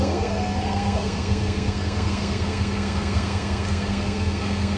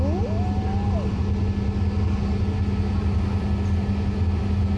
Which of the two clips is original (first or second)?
second